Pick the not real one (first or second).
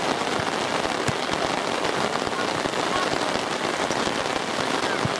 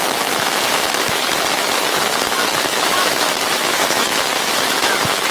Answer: second